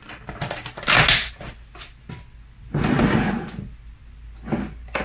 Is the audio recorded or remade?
recorded